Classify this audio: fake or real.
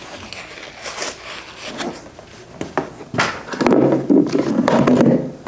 real